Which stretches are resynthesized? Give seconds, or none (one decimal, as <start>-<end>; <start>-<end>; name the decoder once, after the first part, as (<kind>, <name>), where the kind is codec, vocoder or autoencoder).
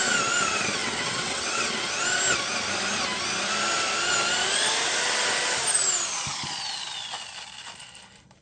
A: 0.8-1.7 (vocoder, WaveNeXt)